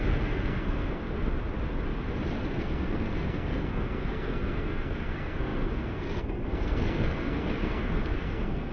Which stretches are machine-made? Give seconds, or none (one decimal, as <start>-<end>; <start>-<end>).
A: 0.0-1.0; 2.5-8.7